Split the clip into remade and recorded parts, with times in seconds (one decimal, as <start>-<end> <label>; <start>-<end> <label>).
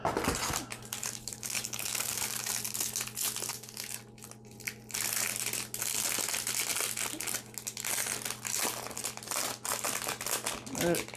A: 0.0-1.0 recorded; 1.0-2.5 remade; 2.5-3.5 recorded; 3.5-4.0 remade; 4.0-11.2 recorded